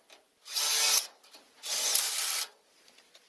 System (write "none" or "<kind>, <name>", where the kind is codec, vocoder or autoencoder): none